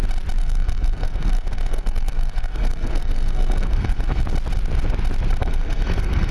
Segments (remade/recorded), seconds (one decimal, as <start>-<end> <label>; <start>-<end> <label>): 0.0-0.4 recorded; 0.4-4.2 remade; 4.2-5.4 recorded; 5.4-6.3 remade